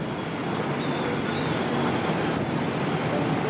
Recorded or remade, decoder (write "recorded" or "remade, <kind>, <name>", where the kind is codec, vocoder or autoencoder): recorded